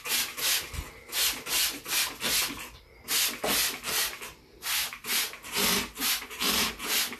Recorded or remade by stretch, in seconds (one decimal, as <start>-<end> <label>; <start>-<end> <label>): 0.0-5.0 recorded; 5.0-6.7 remade; 6.7-7.2 recorded